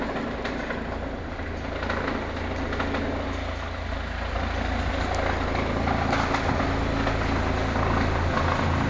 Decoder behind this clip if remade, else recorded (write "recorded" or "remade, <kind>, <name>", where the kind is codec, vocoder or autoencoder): recorded